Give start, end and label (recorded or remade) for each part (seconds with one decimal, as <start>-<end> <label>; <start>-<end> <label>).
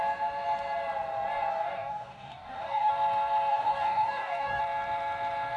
0.0-1.5 recorded; 1.5-2.9 remade; 2.9-3.5 recorded; 3.5-4.6 remade; 4.6-5.6 recorded